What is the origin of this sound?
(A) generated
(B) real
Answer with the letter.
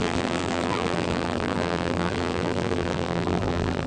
A